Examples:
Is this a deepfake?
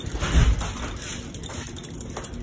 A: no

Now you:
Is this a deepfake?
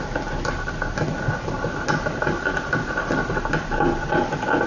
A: no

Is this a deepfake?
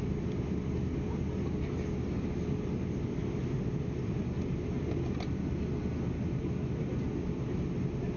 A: no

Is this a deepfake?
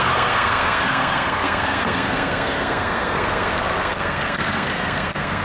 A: yes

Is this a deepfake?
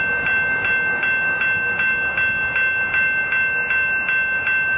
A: no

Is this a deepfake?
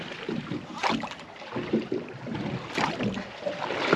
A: no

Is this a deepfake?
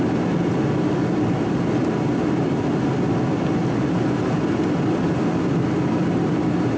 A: no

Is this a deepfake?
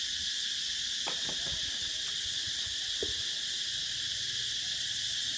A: no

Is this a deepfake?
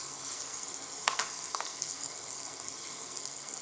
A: yes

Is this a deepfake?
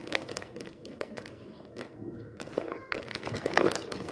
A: yes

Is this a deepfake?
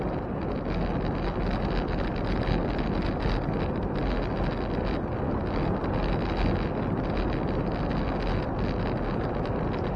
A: no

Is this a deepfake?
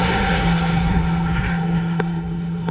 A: yes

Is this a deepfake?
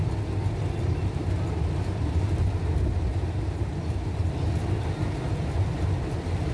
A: no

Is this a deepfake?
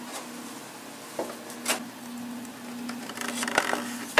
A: no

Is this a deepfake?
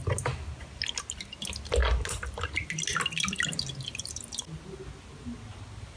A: no